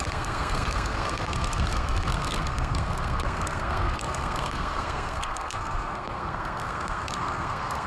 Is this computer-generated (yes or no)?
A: yes